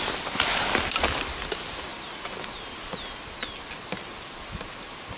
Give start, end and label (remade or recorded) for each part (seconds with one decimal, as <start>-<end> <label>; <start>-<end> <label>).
0.0-5.2 recorded